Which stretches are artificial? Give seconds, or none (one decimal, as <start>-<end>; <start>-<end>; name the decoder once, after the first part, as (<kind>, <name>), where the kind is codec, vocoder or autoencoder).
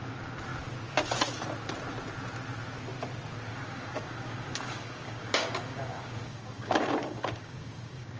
3.5-8.2 (codec, DAC)